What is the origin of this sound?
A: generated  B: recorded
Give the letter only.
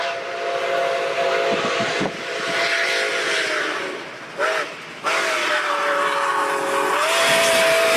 B